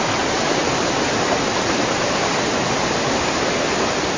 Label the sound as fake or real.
fake